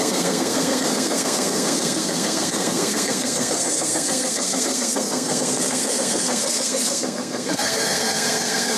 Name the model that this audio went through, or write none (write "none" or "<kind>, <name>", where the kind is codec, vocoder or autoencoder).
codec, SNAC